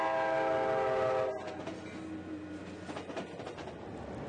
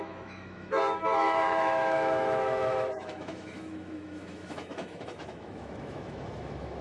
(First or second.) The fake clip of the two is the second